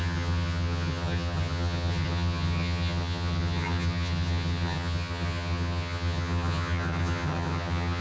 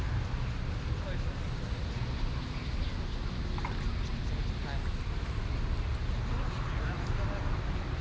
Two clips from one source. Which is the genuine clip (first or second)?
second